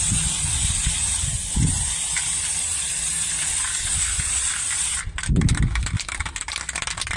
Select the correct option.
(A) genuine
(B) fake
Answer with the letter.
A